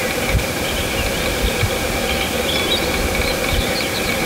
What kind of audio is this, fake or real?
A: fake